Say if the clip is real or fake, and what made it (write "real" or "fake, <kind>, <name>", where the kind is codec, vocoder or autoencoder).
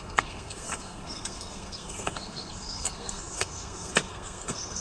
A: fake, codec, SNAC